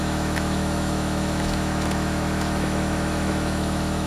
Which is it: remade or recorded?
remade